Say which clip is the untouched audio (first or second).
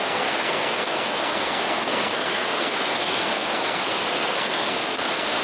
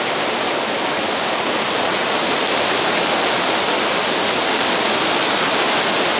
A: second